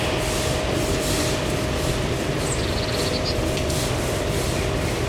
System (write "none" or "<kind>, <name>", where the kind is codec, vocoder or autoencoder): none